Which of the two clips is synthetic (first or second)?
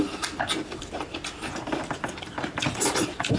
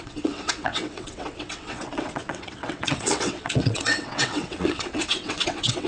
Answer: second